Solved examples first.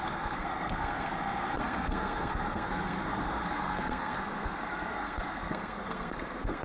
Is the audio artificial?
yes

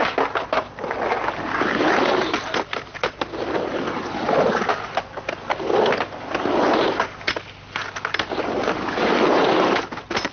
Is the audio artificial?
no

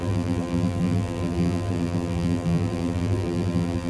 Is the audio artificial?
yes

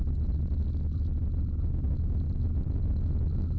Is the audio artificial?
no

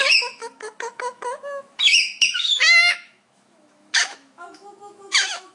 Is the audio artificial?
yes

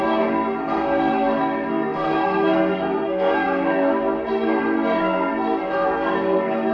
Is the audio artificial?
yes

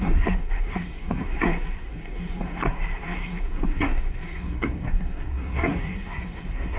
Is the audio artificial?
yes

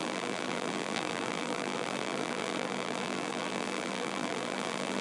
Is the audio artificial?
yes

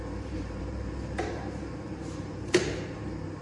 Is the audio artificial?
yes